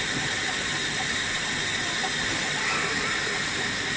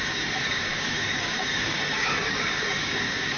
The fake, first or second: second